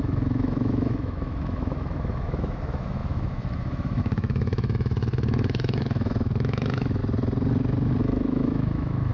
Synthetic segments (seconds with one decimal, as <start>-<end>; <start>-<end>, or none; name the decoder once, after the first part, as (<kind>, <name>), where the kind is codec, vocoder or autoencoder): 0.0-7.0 (autoencoder, DAC-VAE); 8.0-9.1